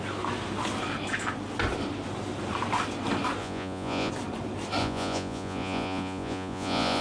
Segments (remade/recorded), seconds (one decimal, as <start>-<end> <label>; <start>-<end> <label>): 0.0-3.4 recorded; 3.4-4.1 remade; 4.1-4.8 recorded; 4.8-7.0 remade